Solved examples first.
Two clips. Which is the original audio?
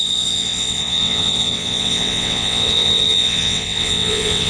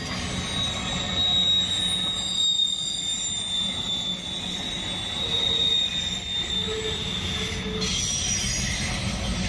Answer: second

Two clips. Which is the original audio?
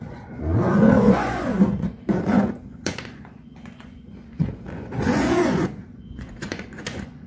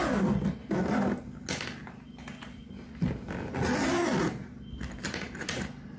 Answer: second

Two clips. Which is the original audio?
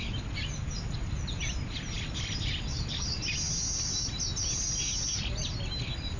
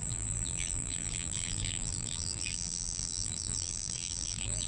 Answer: first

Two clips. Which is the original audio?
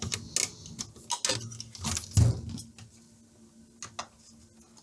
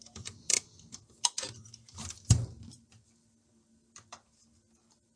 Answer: first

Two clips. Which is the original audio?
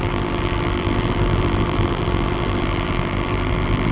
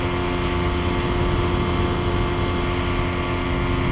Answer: second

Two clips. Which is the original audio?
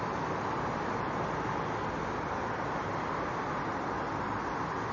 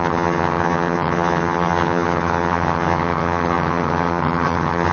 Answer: first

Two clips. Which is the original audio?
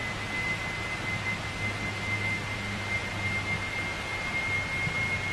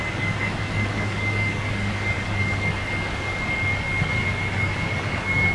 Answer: first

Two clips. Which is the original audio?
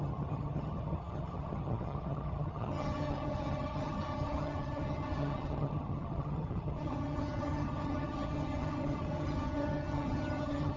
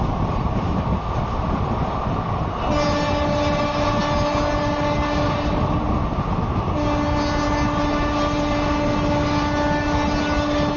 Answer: second